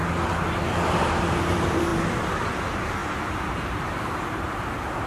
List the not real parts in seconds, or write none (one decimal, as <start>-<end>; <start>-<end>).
1.0-1.9; 2.6-5.1